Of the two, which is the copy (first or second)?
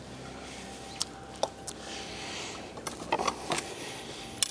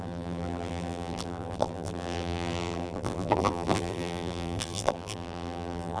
second